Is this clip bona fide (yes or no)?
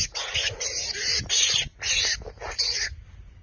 yes